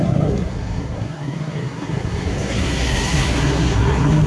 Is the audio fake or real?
fake